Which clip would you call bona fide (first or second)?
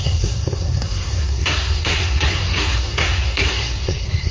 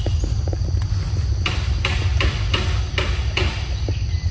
second